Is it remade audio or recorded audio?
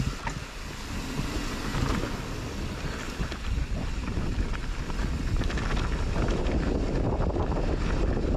recorded